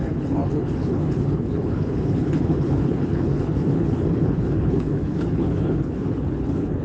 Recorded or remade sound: remade